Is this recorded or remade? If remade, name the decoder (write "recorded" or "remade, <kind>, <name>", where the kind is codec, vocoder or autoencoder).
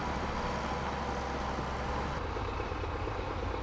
recorded